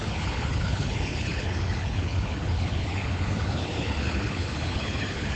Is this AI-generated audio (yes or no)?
yes